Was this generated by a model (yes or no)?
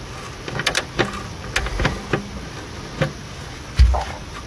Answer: no